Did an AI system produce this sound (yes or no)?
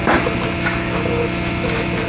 no